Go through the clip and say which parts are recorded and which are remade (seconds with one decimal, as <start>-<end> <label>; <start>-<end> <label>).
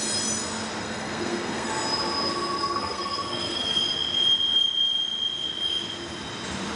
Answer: 0.0-0.8 recorded; 0.8-1.7 remade; 1.7-2.6 recorded; 2.6-3.8 remade; 3.8-6.8 recorded